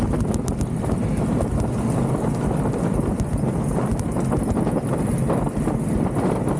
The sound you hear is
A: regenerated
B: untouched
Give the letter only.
B